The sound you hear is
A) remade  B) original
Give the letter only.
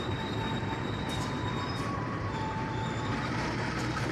A